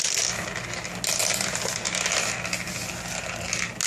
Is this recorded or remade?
recorded